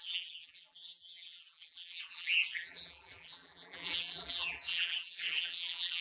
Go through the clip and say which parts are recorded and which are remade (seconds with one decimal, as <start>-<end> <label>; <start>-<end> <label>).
0.0-6.0 remade